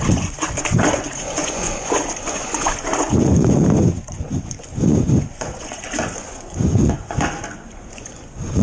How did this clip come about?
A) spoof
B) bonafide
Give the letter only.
A